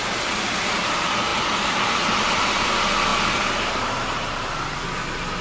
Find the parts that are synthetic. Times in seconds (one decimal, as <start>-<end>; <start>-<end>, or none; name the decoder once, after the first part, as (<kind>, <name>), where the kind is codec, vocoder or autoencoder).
1.3-2.7 (vocoder, BigVGAN v2); 3.1-4.8

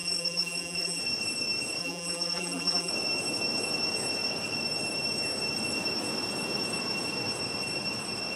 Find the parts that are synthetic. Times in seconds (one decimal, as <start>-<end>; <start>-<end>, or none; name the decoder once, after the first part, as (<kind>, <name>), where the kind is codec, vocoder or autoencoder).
0.0-1.0 (vocoder, BigVGAN v2); 1.8-2.9

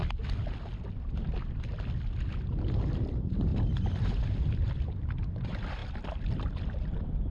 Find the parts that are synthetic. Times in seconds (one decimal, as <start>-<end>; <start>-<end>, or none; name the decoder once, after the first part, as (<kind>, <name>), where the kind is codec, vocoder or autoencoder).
3.1-7.3 (vocoder, BigVGAN v2)

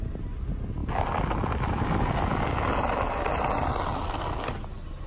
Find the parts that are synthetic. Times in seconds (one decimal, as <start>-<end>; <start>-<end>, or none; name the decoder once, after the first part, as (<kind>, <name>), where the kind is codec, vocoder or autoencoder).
0.8-3.8 (vocoder, BigVGAN v2)

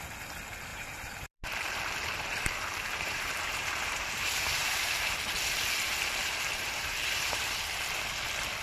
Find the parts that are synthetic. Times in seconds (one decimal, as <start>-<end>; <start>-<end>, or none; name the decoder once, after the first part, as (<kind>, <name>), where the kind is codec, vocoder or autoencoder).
0.7-5.1 (vocoder, BigVGAN v2); 6.2-7.5

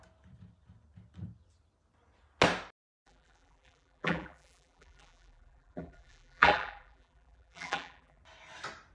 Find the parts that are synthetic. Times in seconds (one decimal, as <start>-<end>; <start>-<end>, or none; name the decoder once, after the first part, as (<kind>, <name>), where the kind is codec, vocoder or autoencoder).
3.0-8.2 (vocoder, BigVGAN v2)

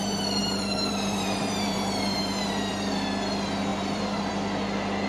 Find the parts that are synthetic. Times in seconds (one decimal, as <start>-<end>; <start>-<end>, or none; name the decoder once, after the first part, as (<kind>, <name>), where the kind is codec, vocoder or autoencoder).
0.4-2.7 (vocoder, BigVGAN v2); 3.7-4.3